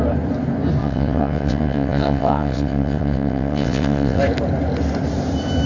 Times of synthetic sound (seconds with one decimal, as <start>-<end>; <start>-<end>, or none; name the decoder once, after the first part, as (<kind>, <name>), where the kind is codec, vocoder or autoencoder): 0.8-4.2 (vocoder, WaveNeXt)